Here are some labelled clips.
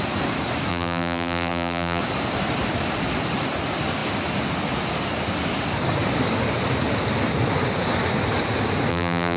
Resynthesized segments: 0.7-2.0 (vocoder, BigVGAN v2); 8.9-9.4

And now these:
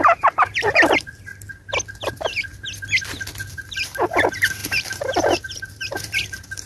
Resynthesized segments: 0.0-1.3 (vocoder, BigVGAN v2); 2.1-2.5; 3.5-6.7

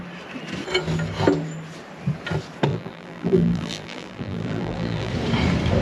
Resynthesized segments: 2.7-5.1 (vocoder, BigVGAN v2)

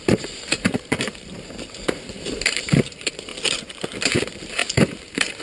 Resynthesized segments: 0.0-3.3 (vocoder, BigVGAN v2); 4.0-5.4

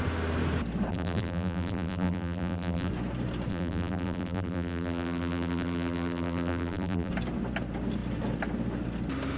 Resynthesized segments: 0.9-2.9 (vocoder, BigVGAN v2); 3.5-7.1